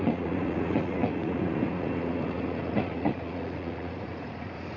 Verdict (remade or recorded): remade